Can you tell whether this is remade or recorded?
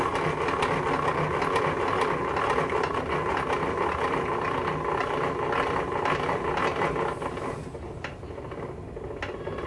recorded